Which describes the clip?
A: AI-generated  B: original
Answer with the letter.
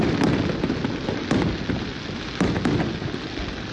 B